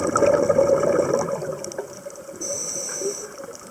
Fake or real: real